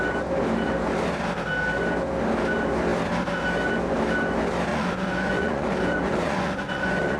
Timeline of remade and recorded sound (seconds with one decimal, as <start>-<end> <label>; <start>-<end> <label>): 0.0-4.7 recorded; 4.7-7.2 remade